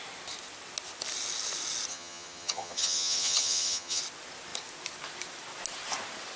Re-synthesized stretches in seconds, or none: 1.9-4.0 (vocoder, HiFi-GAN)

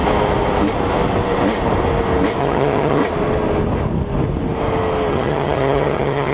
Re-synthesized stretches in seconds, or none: 2.4-3.0 (vocoder, HiFi-GAN); 5.1-6.3

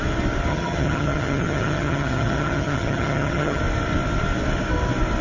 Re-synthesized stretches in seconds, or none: 0.5-3.6 (vocoder, HiFi-GAN)